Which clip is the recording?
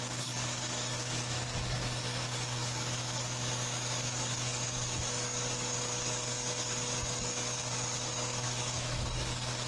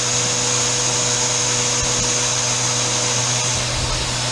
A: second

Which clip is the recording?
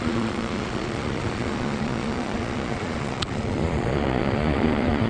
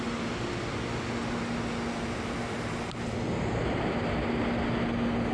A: second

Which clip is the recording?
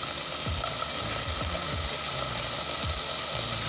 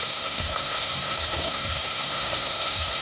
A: first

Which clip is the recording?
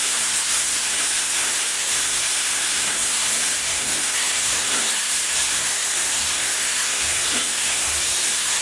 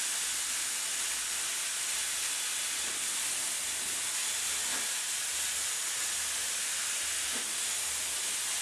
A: second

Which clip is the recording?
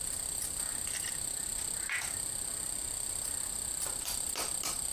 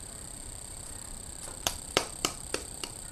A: first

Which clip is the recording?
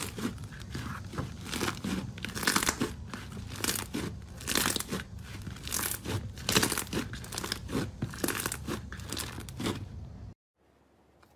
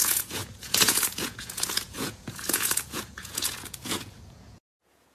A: first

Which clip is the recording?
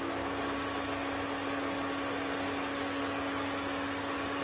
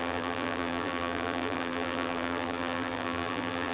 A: first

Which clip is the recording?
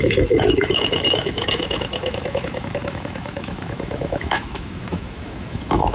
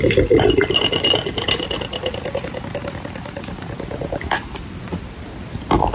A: second